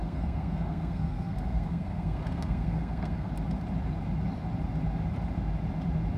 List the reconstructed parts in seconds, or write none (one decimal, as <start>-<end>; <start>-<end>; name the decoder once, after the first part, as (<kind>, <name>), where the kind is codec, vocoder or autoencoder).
0.0-3.3 (codec, SNAC)